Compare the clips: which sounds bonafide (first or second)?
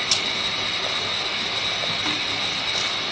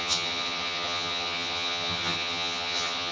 first